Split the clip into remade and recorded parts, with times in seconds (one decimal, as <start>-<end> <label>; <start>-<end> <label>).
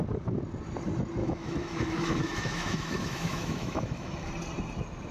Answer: 0.0-1.2 recorded; 1.2-4.3 remade; 4.3-5.1 recorded